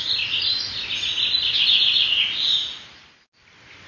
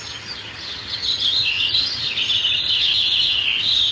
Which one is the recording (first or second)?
first